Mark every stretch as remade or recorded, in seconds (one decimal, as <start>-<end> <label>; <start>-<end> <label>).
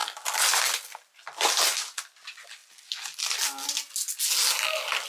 0.0-5.1 recorded